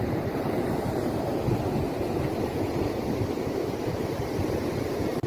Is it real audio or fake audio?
fake